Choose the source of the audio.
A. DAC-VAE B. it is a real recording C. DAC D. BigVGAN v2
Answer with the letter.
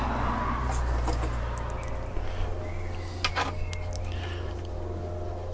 B